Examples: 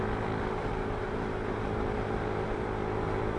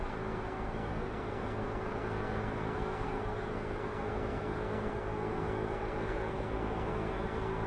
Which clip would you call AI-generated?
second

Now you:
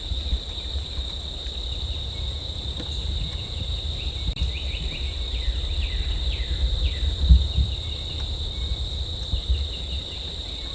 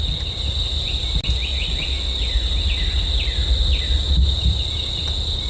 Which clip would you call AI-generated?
first